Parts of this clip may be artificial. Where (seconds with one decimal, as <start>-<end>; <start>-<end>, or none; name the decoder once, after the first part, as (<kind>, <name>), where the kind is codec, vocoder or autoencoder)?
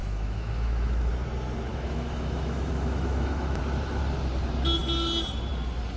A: 0.0-1.1 (autoencoder, DAC-VAE); 1.7-3.6